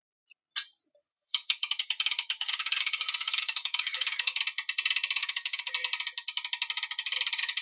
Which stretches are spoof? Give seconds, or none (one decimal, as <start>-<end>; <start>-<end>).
1.1-4.4; 5.2-5.7